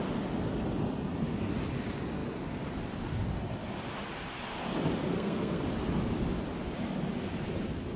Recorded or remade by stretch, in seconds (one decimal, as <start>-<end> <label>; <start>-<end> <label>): 0.0-5.0 recorded; 5.0-5.6 remade; 5.6-8.0 recorded